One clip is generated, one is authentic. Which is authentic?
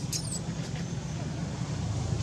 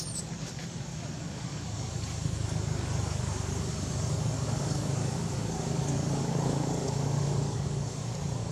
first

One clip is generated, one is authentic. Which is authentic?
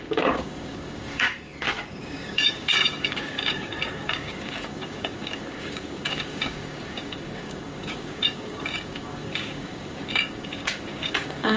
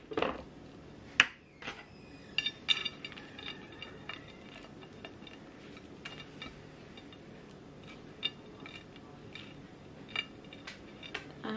second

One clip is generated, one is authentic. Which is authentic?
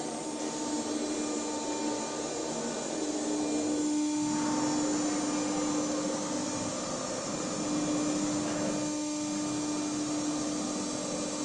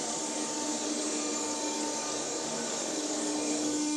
first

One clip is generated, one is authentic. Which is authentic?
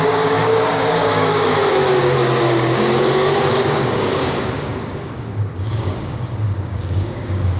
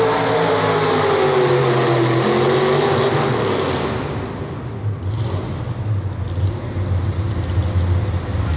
second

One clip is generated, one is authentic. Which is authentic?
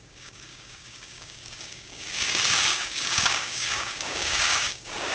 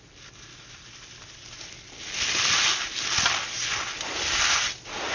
second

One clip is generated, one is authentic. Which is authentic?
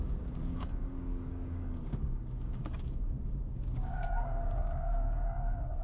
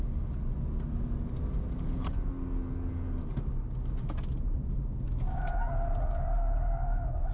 second